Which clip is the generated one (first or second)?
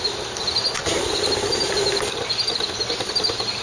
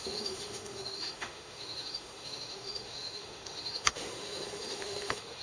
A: second